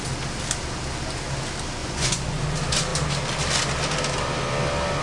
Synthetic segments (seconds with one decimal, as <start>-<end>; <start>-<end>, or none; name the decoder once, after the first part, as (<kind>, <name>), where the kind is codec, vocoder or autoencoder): 1.8-2.4 (vocoder, Vocos)